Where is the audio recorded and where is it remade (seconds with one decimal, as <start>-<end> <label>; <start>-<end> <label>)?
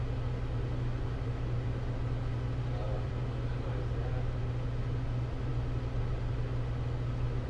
0.0-7.5 recorded